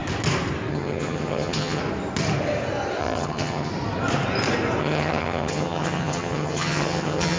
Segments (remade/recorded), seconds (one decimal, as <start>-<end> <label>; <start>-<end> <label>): 0.0-0.7 recorded; 0.7-1.8 remade; 1.8-3.0 recorded; 3.0-3.7 remade; 3.7-4.8 recorded; 4.8-7.4 remade